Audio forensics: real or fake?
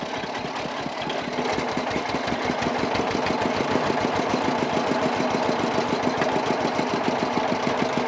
real